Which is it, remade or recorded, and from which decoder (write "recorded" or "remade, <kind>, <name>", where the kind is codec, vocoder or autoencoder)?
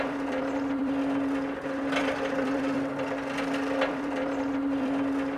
remade, vocoder, BigVGAN v2